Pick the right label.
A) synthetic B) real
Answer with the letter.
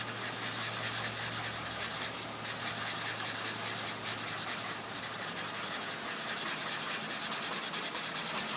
B